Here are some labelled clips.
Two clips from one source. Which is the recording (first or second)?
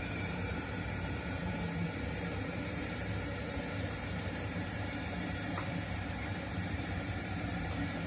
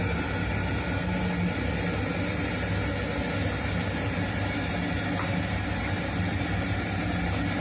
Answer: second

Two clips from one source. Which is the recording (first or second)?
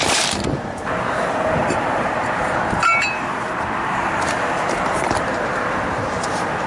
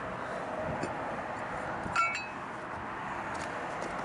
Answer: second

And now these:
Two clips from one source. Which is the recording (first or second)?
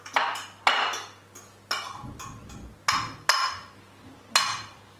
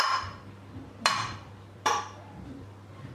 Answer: first